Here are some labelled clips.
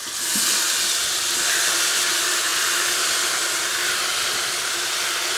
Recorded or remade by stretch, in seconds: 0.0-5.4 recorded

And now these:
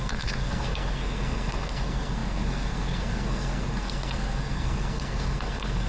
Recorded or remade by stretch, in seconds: 0.0-5.9 remade

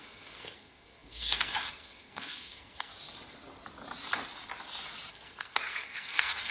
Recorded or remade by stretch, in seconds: 0.0-2.9 remade; 2.9-5.1 recorded; 5.1-6.5 remade

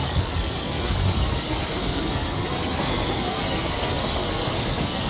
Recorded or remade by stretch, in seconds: 0.0-5.1 remade